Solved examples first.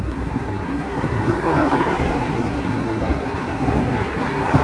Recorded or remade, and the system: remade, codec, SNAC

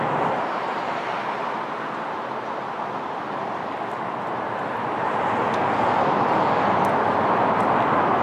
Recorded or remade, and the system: recorded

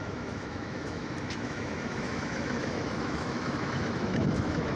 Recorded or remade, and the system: remade, autoencoder, DAC-VAE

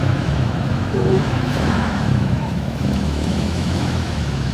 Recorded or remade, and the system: remade, autoencoder, DAC-VAE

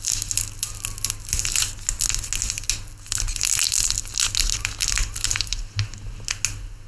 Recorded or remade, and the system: recorded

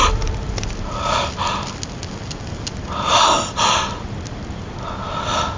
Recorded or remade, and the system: recorded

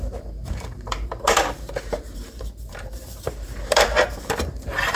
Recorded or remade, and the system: remade, vocoder, BigVGAN v2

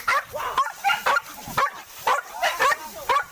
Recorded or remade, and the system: recorded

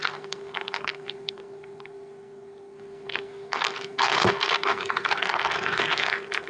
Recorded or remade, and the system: remade, codec, SNAC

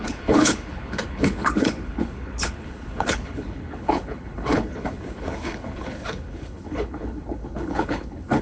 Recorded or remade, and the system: remade, codec, HILCodec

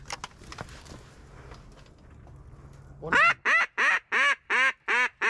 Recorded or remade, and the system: recorded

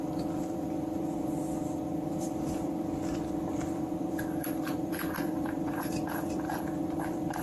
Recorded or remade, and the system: remade, vocoder, BigVGAN v2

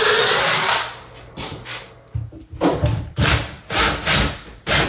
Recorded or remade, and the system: recorded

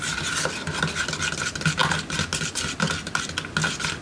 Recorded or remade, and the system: recorded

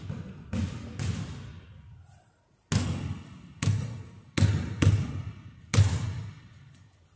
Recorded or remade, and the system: recorded